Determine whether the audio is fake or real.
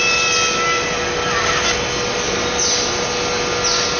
real